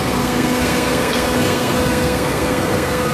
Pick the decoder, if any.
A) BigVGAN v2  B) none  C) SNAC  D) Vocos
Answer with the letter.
C